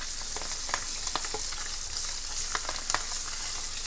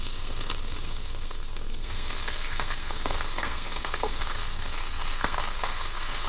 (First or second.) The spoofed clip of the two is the second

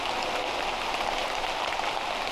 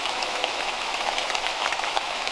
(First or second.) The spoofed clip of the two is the second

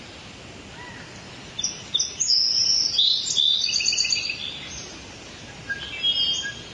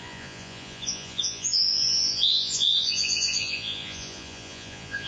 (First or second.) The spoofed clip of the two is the second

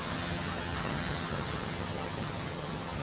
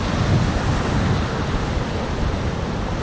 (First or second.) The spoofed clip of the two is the first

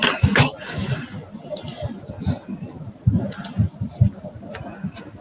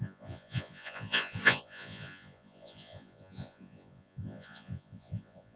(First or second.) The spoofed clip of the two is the second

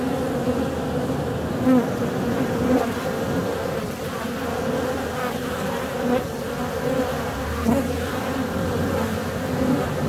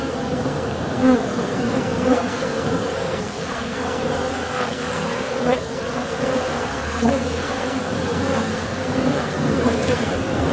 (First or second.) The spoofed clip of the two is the second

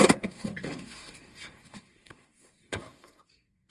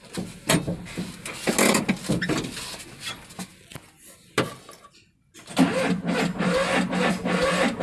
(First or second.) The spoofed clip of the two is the first